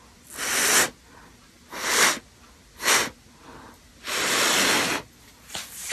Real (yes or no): yes